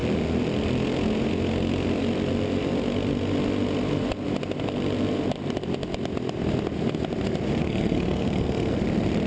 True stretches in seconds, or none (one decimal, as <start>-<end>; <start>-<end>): 0.0-7.6; 8.8-9.3